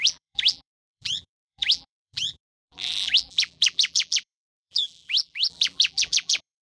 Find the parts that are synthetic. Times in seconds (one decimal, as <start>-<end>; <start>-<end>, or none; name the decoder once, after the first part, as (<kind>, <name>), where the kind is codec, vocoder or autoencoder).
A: 0.0-6.7 (vocoder, BigVGAN v2)